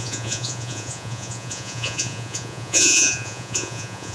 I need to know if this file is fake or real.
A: fake